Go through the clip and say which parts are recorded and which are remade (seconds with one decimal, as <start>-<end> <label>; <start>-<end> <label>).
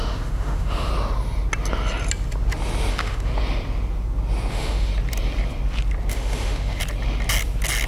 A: 0.0-0.9 remade; 0.9-2.9 recorded; 2.9-3.3 remade; 3.3-4.5 recorded; 4.5-4.9 remade; 4.9-6.1 recorded; 6.1-6.8 remade; 6.8-7.9 recorded